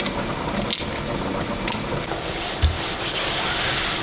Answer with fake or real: real